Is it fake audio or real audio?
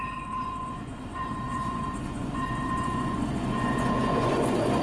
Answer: fake